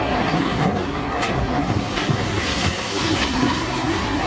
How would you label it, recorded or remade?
remade